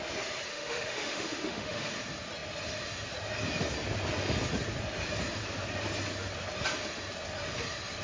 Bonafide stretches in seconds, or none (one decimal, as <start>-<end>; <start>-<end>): 0.0-0.5; 1.9-8.0

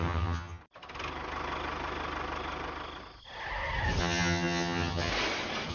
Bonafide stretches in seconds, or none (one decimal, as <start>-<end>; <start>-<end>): 0.6-4.0; 5.1-5.7

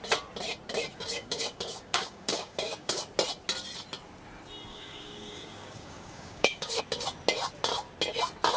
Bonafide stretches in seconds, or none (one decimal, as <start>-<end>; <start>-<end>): 0.0-0.9; 3.0-4.7; 6.8-8.6

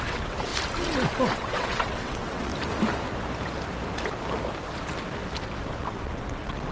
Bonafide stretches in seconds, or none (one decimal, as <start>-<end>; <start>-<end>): 0.5-1.3; 2.5-5.8

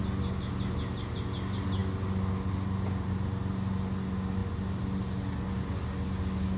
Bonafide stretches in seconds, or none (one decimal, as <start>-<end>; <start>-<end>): 0.0-6.6

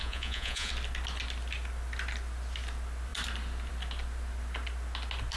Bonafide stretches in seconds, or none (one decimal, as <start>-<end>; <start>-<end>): 0.7-5.4

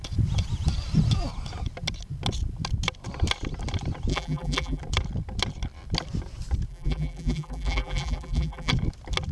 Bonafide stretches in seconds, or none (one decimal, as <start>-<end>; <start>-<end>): 0.0-4.1; 4.8-6.7; 8.7-9.3

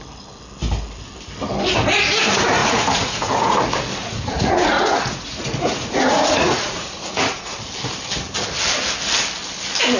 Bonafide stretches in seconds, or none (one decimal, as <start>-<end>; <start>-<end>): 0.0-2.6; 3.6-4.0; 7.6-10.0